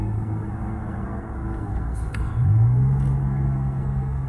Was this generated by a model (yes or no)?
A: yes